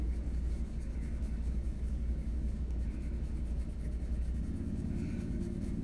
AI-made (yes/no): yes